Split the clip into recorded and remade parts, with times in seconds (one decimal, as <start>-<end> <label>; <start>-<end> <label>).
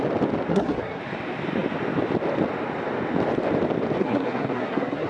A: 0.0-0.5 recorded; 0.5-1.0 remade; 1.0-4.0 recorded; 4.0-5.1 remade